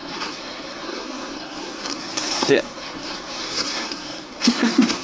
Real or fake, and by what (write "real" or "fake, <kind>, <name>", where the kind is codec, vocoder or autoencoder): fake, codec, SNAC